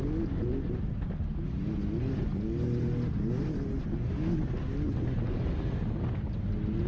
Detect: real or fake real